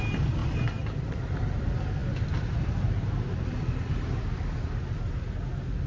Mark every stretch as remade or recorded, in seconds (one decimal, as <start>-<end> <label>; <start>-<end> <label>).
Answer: 0.0-5.9 recorded